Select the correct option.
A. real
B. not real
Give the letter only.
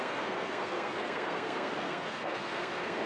B